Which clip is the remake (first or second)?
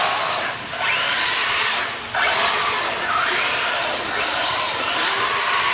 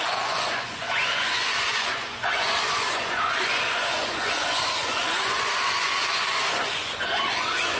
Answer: second